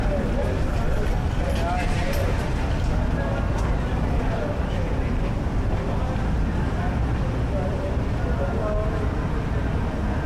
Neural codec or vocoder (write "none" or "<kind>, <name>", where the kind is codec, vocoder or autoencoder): none